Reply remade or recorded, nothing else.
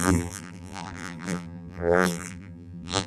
remade